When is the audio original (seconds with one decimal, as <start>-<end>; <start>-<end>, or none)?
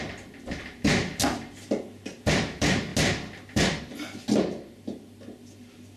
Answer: 0.0-6.0